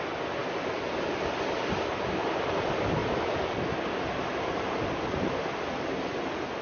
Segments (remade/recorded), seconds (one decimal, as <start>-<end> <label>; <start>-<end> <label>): 0.0-6.6 recorded